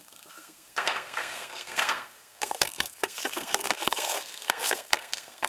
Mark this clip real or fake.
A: fake